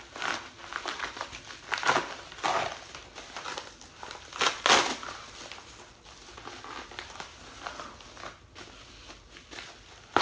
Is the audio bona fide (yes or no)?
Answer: yes